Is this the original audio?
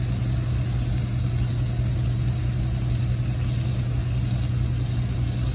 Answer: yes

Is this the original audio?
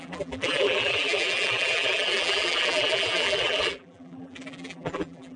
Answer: no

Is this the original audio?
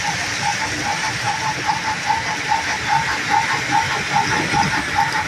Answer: yes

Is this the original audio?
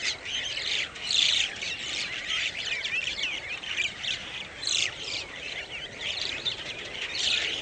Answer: no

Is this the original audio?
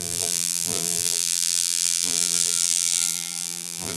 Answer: no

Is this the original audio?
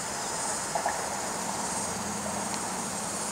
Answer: yes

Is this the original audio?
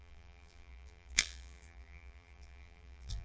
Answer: no